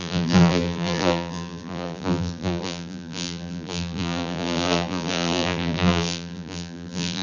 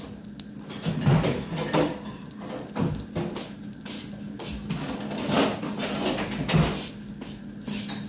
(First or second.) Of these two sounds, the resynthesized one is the first